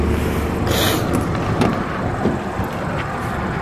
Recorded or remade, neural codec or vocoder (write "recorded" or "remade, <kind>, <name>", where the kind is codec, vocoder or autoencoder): recorded